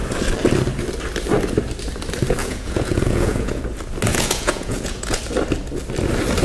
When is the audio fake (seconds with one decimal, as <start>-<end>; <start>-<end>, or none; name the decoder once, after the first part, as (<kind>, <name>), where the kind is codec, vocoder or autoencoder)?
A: 2.4-3.6 (vocoder, Vocos); 4.1-5.2

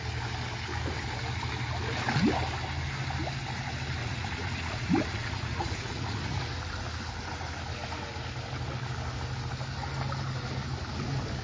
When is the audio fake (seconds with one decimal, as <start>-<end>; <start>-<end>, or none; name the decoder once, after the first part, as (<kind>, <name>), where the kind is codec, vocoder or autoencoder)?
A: 4.0-6.4 (vocoder, Vocos)

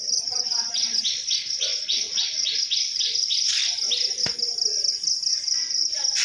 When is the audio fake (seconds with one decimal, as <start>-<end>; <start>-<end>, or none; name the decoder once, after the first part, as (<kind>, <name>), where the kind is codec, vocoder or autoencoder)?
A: 0.0-3.6 (vocoder, Vocos); 5.3-6.2

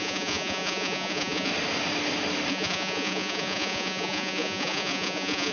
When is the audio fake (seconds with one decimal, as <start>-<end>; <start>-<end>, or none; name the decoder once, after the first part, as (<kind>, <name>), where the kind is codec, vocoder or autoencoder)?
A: 0.0-1.5 (vocoder, Vocos); 2.5-5.5

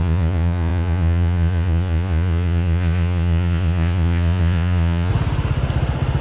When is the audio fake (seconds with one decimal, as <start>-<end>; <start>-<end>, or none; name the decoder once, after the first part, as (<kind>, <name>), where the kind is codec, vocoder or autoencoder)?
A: 0.0-5.1 (vocoder, Vocos)

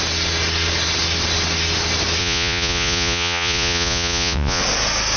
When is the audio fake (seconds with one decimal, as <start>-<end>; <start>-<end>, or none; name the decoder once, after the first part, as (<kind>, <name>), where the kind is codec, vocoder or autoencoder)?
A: 2.2-4.6 (vocoder, Vocos)

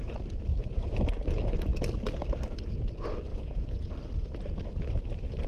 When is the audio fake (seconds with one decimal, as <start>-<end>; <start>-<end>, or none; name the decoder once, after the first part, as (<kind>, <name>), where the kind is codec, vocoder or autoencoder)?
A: 0.6-1.1 (vocoder, Vocos); 3.3-3.9

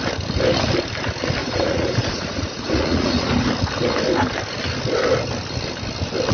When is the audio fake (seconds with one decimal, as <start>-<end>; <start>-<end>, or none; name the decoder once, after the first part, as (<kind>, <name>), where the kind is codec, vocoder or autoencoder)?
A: 1.4-3.3 (vocoder, Vocos)